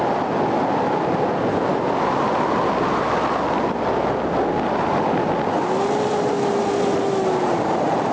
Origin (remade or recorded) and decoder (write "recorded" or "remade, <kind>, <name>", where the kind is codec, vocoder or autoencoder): recorded